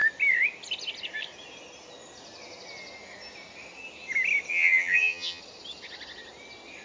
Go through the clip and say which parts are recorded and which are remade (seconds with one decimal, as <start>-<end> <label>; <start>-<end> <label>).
0.0-4.5 recorded; 4.5-5.4 remade; 5.4-6.8 recorded